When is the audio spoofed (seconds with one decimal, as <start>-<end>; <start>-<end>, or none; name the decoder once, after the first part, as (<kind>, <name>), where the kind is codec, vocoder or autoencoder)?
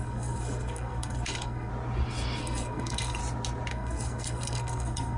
0.0-1.7 (codec, SNAC); 2.4-3.2; 3.7-5.2